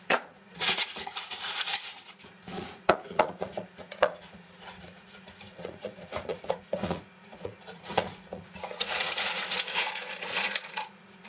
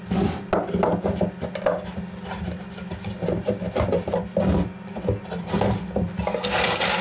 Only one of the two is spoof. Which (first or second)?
first